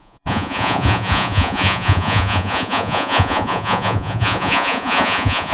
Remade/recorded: remade